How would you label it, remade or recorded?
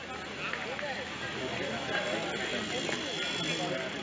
recorded